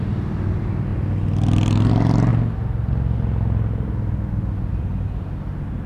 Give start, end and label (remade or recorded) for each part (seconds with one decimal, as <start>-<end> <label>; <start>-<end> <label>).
0.0-5.9 recorded